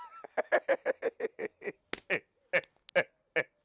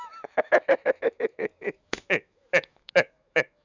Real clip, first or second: first